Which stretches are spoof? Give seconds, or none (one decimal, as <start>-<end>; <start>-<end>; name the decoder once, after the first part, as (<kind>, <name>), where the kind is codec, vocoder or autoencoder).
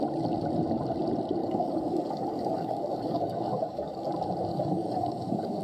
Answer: 1.4-4.1 (codec, DAC); 4.5-5.6